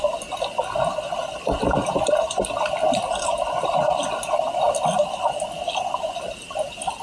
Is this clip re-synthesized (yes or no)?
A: no